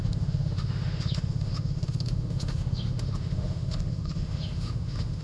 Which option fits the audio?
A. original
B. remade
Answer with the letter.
B